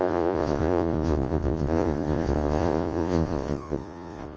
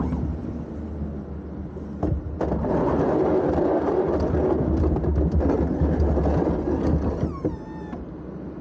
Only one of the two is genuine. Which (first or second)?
second